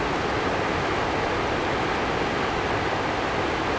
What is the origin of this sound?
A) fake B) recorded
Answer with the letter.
B